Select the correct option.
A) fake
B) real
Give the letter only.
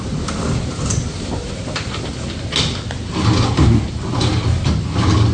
B